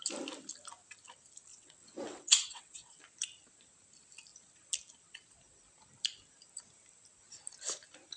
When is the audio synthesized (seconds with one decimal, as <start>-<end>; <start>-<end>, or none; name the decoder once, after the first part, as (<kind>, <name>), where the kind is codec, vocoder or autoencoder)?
1.5-3.0 (vocoder, WaveNeXt)